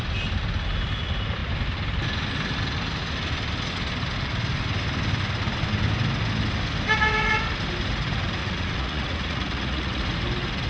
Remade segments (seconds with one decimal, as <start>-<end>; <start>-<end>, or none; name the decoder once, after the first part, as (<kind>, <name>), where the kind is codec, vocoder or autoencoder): 8.4-10.0 (vocoder, Vocos)